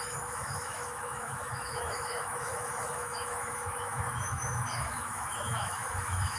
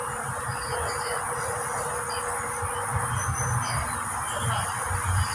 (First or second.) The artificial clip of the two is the first